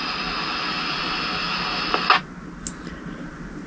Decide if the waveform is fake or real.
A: real